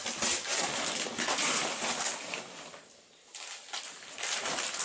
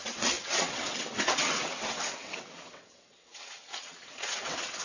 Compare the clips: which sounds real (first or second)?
first